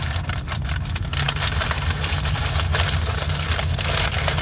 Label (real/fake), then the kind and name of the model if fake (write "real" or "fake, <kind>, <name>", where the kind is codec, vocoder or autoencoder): real